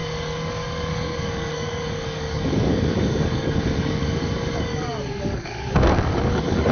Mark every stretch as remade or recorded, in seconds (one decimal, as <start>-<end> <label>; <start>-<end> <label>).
0.0-6.7 remade